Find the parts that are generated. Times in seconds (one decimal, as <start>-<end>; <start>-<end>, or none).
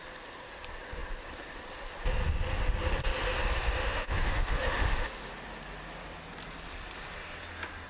3.8-5.3